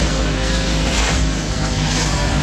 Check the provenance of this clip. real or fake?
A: fake